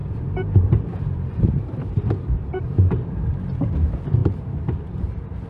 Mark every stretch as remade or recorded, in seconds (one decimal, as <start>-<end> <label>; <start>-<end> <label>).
0.0-3.3 remade; 3.3-5.5 recorded